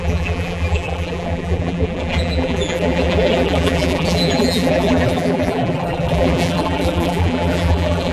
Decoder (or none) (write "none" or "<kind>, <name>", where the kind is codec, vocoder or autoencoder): vocoder, BigVGAN v2